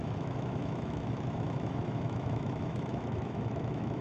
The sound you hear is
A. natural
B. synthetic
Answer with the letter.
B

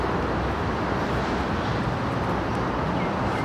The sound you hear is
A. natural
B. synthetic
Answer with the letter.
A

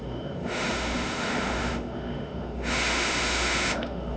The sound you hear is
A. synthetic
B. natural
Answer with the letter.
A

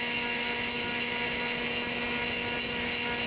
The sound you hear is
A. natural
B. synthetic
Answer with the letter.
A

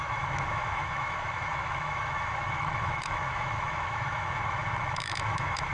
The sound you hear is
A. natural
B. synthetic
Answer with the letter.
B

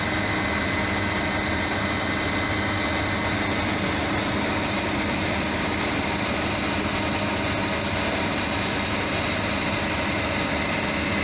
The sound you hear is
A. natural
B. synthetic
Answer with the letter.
A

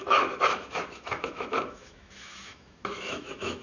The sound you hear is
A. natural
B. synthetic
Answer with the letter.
B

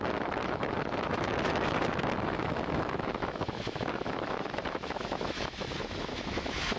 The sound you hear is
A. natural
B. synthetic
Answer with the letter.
B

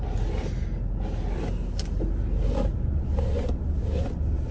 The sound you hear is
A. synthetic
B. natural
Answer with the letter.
B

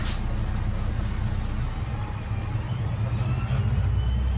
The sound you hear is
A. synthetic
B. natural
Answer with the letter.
B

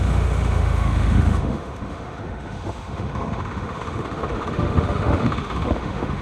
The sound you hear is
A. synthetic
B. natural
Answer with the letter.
A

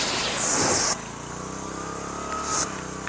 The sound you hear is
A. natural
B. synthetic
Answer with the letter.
A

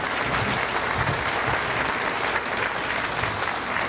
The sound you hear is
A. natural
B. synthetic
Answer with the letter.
A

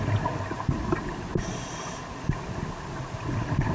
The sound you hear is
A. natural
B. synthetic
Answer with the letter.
A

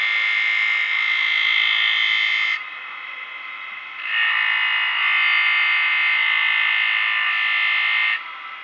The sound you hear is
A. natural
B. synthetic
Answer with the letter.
A